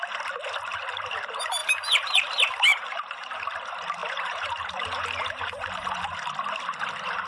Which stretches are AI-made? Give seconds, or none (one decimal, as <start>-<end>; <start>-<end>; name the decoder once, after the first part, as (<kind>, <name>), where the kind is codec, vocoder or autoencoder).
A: 1.6-2.3 (vocoder, BigVGAN v2); 2.7-3.3; 4.0-6.3